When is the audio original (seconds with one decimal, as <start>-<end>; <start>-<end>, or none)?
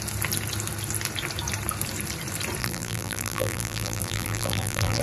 0.0-2.6